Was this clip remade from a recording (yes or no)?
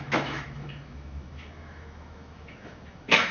yes